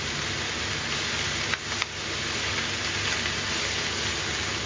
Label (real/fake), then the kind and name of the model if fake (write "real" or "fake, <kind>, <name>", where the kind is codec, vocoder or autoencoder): real